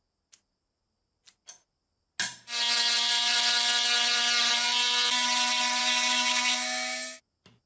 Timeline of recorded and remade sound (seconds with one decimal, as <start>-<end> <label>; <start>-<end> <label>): 0.0-5.8 recorded; 5.8-7.2 remade; 7.2-7.7 recorded

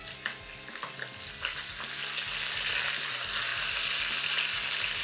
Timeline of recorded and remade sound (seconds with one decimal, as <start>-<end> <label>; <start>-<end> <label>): 0.0-5.0 recorded

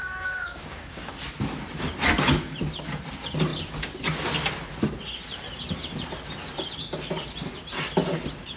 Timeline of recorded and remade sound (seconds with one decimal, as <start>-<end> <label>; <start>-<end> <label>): 0.0-1.1 remade; 1.1-8.6 recorded

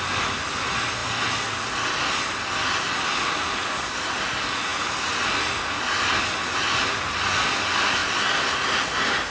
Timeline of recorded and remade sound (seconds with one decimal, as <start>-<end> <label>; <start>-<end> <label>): 0.0-9.3 recorded

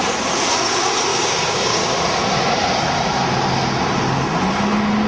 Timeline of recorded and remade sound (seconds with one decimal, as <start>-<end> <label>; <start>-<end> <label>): 0.0-1.1 recorded; 1.1-1.9 remade; 1.9-5.1 recorded

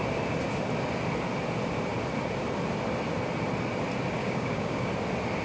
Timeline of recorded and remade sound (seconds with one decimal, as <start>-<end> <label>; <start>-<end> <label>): 0.0-4.2 recorded; 4.2-4.9 remade; 4.9-5.4 recorded

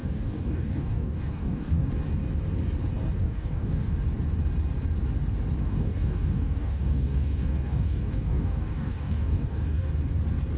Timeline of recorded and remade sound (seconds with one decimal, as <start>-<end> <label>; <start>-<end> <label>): 0.0-1.9 remade; 1.9-3.2 recorded; 3.2-3.9 remade; 3.9-5.6 recorded; 5.6-9.9 remade; 9.9-10.6 recorded